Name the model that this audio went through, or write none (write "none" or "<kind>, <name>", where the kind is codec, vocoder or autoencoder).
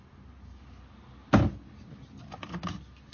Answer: none